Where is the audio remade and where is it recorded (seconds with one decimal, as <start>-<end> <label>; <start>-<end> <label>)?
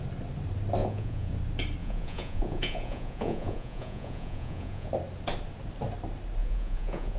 0.0-0.8 recorded; 0.8-1.3 remade; 1.3-1.8 recorded; 1.8-4.9 remade; 4.9-6.4 recorded; 6.4-7.2 remade